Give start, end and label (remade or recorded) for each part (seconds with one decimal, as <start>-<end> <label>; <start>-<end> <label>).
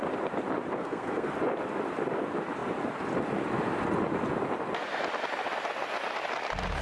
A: 0.0-0.7 recorded; 0.7-1.3 remade; 1.3-6.8 recorded